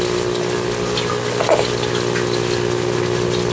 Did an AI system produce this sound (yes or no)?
no